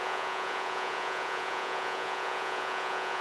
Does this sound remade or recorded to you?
remade